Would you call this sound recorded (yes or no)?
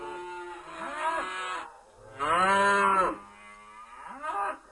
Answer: yes